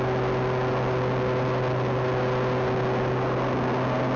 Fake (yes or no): no